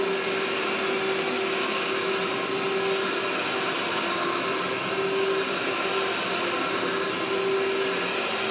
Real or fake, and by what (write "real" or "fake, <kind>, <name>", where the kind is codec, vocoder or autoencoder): real